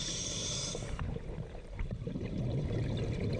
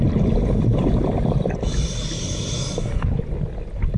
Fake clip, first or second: first